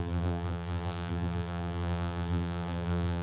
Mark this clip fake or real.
fake